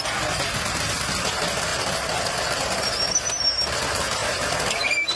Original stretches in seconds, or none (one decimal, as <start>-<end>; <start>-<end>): 0.0-5.2